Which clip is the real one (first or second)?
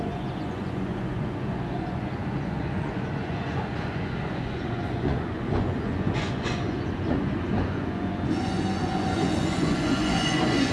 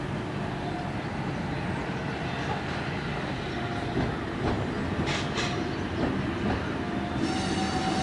second